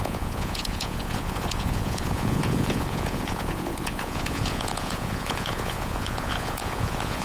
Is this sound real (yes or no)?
no